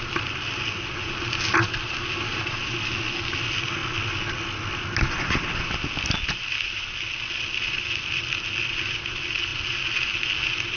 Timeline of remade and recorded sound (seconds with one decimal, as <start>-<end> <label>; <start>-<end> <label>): 0.0-10.8 recorded